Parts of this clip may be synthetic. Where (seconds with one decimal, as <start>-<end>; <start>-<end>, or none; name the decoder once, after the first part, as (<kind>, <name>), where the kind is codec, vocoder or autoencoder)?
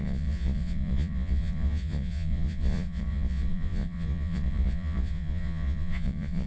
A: 0.0-6.5 (vocoder, Vocos)